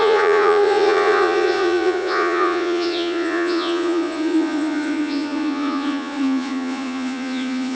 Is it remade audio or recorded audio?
remade